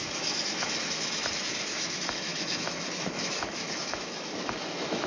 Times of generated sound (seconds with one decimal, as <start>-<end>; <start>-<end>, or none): 0.0-5.1